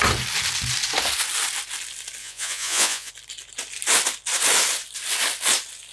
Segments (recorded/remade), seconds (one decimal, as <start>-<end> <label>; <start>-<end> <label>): 0.0-2.2 recorded; 2.2-3.1 remade; 3.1-5.9 recorded